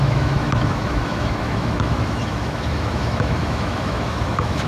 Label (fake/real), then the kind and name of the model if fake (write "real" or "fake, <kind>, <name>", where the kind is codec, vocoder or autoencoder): fake, autoencoder, DAC-VAE